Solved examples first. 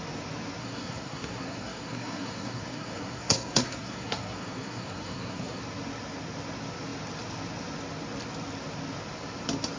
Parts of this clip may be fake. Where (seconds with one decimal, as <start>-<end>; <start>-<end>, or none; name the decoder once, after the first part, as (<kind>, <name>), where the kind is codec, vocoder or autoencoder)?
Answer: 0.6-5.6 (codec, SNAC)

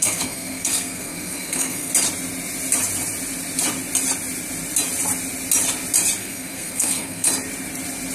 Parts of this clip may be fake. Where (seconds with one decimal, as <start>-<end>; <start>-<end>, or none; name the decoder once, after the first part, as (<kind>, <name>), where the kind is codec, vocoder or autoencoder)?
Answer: 0.0-1.9 (codec, SNAC); 6.2-7.3

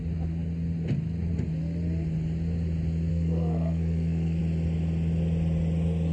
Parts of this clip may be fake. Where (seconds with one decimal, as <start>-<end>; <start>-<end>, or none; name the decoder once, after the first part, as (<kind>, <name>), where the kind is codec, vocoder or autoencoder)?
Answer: 3.1-4.4 (codec, SNAC)